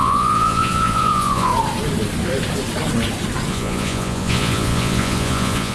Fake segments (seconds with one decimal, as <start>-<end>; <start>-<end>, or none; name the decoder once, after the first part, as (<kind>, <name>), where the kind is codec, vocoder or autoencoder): 0.0-1.5 (vocoder, Vocos); 3.5-5.7